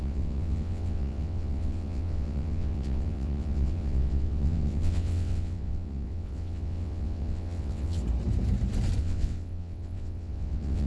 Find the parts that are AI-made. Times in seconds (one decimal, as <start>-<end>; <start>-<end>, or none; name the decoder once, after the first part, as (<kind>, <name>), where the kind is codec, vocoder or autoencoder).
0.0-8.0 (vocoder, WaveNeXt); 9.0-10.9